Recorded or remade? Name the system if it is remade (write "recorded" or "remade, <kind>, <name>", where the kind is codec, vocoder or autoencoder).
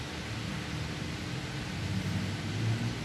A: recorded